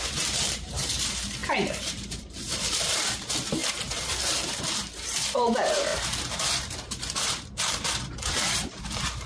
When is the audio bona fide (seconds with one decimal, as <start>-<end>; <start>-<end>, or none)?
none